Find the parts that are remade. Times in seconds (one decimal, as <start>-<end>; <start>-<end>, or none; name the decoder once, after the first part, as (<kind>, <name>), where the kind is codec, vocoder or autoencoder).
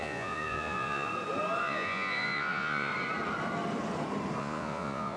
0.0-1.1 (vocoder, Vocos); 1.6-2.9; 4.4-5.2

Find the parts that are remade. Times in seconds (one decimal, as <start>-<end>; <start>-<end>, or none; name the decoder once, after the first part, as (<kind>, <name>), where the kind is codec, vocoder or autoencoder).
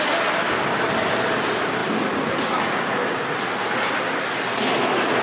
none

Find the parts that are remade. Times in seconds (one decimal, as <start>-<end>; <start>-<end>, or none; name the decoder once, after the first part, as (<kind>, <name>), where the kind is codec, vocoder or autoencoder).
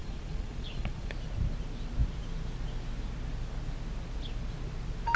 0.0-1.1 (vocoder, Vocos)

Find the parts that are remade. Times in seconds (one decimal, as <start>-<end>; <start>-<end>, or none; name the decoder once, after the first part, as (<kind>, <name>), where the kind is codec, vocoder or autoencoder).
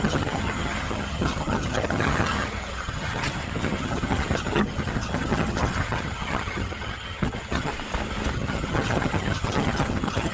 0.0-7.7 (vocoder, HiFi-GAN); 8.3-10.3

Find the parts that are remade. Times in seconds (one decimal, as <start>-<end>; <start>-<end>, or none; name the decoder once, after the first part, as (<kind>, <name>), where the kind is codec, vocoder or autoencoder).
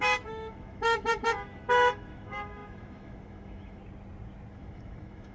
0.0-3.8 (autoencoder, DAC-VAE); 4.5-5.3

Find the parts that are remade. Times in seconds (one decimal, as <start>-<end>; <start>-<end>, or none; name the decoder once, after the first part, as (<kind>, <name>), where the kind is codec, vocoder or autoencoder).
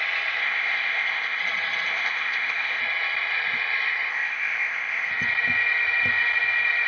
0.4-1.4 (codec, ZipCodec); 1.9-2.8; 4.1-5.1